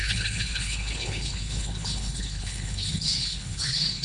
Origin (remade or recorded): remade